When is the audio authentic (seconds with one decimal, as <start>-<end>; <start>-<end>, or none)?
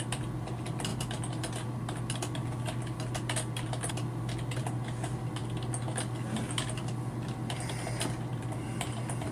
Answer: 0.0-8.3